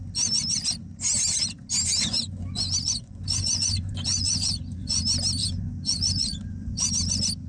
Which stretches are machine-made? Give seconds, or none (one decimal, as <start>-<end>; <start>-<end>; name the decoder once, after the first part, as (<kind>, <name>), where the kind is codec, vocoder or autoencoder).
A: 1.9-5.0 (vocoder, Vocos); 5.4-6.9